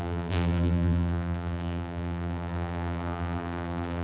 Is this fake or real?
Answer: fake